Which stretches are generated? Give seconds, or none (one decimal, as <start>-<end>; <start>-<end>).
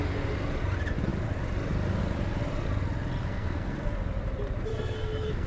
3.2-3.9; 4.7-5.5